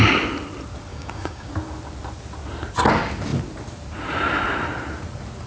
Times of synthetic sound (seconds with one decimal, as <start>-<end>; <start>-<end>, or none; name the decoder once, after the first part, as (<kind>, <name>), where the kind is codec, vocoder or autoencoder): 0.9-1.5 (codec, DAC)